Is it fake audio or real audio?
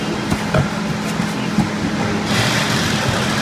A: real